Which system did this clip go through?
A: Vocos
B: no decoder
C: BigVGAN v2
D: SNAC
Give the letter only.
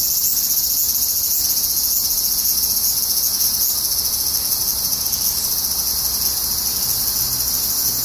B